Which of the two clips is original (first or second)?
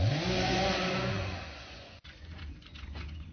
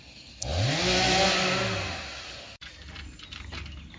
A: second